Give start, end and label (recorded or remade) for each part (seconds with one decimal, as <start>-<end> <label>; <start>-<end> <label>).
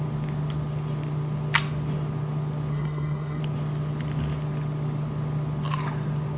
0.0-2.7 recorded; 2.7-3.4 remade; 3.4-6.4 recorded